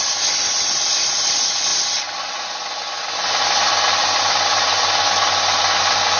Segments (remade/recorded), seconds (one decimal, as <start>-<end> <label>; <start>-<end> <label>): 0.0-6.2 recorded